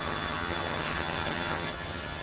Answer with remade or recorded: remade